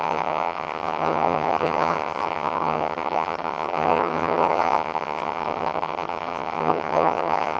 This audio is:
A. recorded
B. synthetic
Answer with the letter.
B